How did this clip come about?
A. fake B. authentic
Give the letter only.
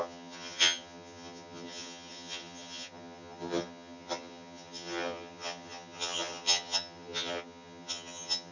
A